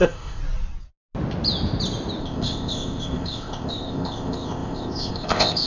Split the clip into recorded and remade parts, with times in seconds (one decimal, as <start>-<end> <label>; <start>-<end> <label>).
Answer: 0.0-0.4 remade; 0.4-2.2 recorded; 2.2-5.7 remade